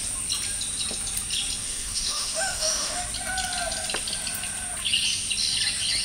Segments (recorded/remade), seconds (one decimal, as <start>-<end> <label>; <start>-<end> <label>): 0.0-1.6 recorded; 1.6-3.0 remade; 3.0-6.0 recorded